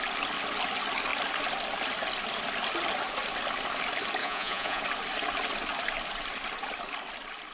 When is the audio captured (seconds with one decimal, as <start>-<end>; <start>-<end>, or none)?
0.0-4.2; 4.8-7.5

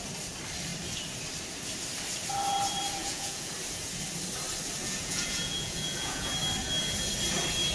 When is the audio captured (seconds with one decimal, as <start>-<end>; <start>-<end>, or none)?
0.0-3.0; 3.5-4.8; 6.3-7.7

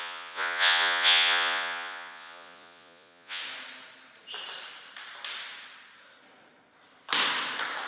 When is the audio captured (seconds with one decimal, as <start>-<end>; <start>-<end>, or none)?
3.4-7.9

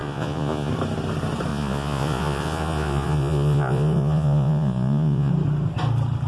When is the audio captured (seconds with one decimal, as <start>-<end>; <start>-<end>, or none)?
0.7-1.5; 5.3-6.3

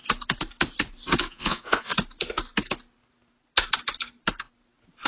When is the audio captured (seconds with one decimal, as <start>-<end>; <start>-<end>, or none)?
0.0-1.3; 1.9-5.1

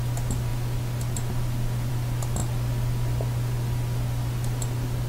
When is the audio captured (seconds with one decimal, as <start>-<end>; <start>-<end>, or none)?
0.0-5.1

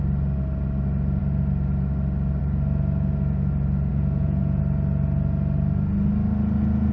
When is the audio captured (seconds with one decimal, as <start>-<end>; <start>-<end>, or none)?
0.0-3.9; 4.6-6.9